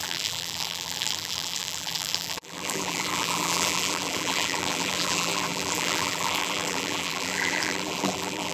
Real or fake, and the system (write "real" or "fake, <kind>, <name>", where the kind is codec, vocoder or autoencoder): fake, vocoder, BigVGAN v2